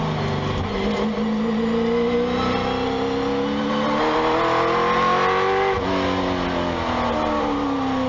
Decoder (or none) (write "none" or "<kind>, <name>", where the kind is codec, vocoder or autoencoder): none